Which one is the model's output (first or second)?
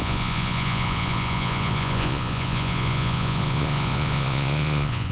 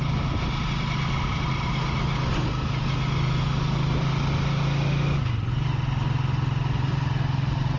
first